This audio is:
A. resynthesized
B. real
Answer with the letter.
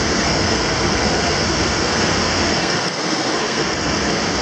A